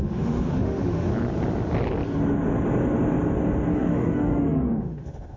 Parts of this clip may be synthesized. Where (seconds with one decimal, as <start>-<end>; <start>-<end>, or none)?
0.0-1.1; 3.7-5.4